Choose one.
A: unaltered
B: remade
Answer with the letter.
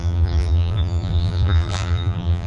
B